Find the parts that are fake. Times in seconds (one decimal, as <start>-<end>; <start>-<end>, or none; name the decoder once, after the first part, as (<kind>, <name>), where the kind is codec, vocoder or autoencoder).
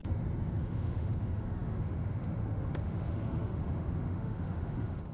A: 0.6-5.1 (autoencoder, DAC-VAE)